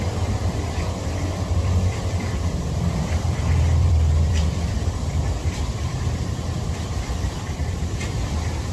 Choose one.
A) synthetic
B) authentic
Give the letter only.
A